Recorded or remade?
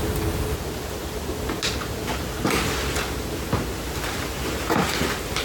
recorded